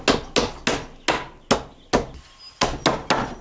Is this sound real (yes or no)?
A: yes